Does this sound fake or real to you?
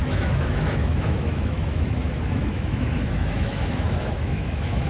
fake